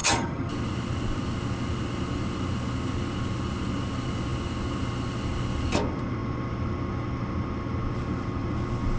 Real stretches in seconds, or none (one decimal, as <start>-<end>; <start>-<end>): 0.5-9.0